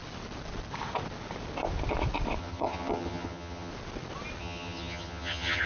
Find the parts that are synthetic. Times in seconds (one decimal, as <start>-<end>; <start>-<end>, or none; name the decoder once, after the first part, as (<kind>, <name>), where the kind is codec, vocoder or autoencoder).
2.4-3.7 (vocoder, HiFi-GAN); 4.4-5.7